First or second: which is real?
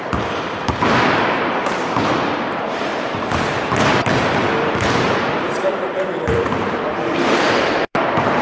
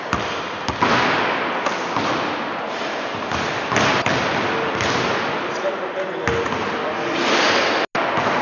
second